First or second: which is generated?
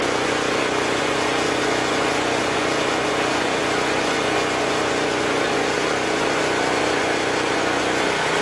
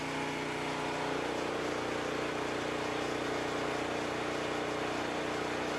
first